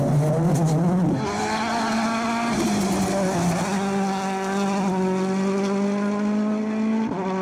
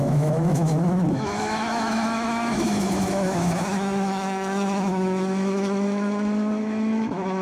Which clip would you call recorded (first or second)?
first